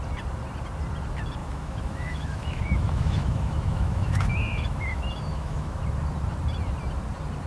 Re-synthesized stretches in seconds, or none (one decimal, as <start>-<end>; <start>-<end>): 1.4-5.8